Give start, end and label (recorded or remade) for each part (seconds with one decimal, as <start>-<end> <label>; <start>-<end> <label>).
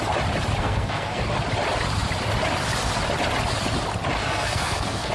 0.0-0.6 recorded; 0.6-1.2 remade; 1.2-4.2 recorded; 4.2-5.1 remade